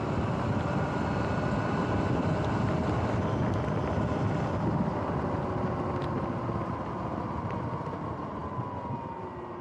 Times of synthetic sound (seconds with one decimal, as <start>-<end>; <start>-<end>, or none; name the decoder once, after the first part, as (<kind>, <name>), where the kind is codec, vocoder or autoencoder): none